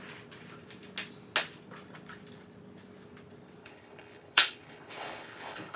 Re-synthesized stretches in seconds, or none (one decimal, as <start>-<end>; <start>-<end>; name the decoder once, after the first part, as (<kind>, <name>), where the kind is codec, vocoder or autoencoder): 3.6-5.8 (codec, HILCodec)

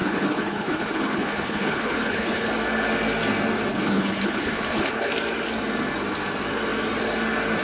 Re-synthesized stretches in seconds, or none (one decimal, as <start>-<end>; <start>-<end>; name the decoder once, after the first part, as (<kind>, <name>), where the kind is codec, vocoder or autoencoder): 0.0-2.5 (codec, HILCodec); 3.7-5.1

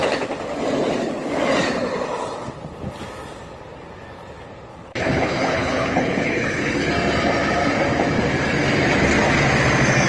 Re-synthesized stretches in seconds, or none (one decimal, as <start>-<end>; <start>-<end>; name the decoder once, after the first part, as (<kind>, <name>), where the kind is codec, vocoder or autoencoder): 4.7-6.9 (codec, HILCodec)

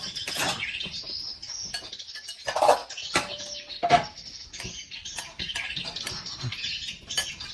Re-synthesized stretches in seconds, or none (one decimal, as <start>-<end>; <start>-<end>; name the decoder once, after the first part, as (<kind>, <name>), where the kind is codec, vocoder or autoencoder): none

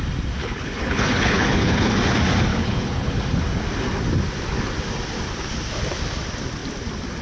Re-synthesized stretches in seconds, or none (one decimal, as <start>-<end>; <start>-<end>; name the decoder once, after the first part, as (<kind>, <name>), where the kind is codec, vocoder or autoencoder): 0.4-1.9 (codec, HILCodec); 2.5-3.2

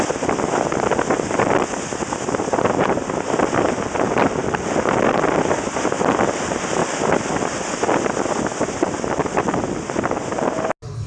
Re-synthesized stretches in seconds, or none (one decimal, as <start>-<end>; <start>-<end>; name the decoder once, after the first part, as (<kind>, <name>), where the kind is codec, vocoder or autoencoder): none

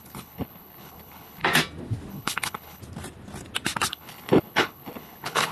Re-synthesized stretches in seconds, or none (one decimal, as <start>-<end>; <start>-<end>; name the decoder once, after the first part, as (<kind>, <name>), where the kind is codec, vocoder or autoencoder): 0.0-1.4 (codec, HILCodec); 2.1-2.8; 3.9-5.5

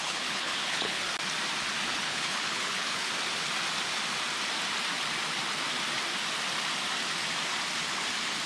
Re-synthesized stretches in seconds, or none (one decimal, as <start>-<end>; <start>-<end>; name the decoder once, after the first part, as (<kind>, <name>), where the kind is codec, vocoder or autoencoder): 0.0-1.1 (codec, HILCodec); 1.9-3.1